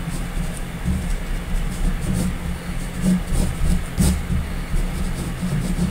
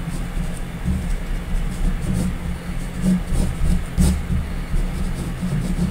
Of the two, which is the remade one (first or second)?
first